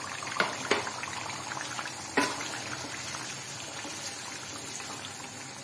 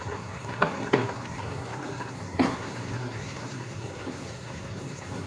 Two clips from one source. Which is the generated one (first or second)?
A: second